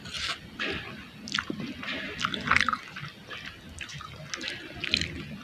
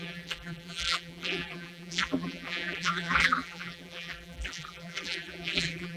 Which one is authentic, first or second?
first